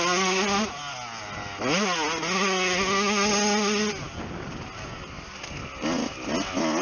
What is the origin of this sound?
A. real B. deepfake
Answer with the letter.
A